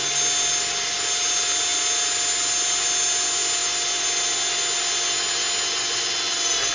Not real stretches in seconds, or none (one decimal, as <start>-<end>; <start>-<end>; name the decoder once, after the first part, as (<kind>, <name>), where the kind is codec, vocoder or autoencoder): none